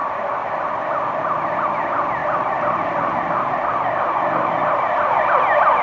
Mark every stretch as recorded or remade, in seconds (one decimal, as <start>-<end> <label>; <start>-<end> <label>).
0.0-0.8 remade; 0.8-2.2 recorded; 2.2-5.2 remade; 5.2-5.8 recorded